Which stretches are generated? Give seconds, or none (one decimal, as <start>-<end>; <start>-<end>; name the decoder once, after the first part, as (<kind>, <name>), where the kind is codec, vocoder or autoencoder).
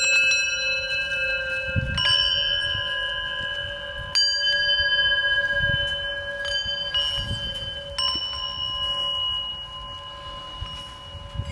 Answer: none